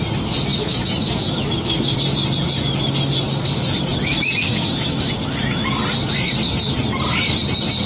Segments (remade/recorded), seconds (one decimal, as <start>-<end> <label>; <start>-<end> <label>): 0.0-0.5 recorded; 0.5-2.0 remade; 2.0-4.1 recorded; 4.1-5.8 remade; 5.8-7.9 recorded